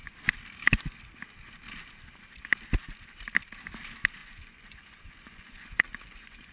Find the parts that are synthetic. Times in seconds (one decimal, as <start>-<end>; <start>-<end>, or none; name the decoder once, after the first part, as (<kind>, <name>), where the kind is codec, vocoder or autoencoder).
4.2-6.5 (vocoder, Vocos)